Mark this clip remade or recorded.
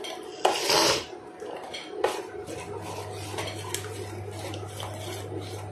recorded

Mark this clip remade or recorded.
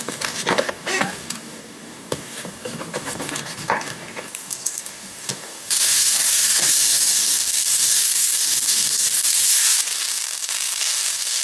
remade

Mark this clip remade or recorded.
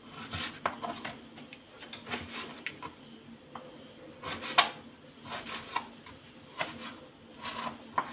recorded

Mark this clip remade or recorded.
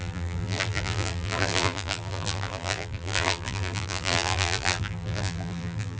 remade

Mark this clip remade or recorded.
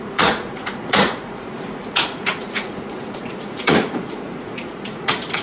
remade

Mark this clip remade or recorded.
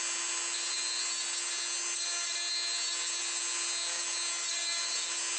recorded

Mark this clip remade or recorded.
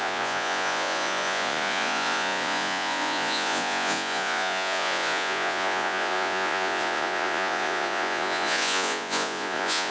remade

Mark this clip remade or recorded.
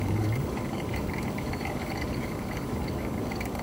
remade